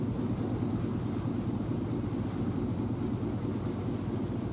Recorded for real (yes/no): yes